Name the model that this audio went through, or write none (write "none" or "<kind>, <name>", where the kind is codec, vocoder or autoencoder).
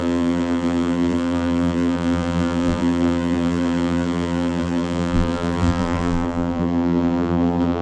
vocoder, BigVGAN v2